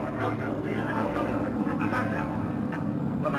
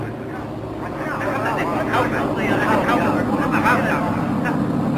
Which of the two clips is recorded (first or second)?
second